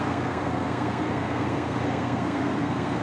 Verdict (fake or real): fake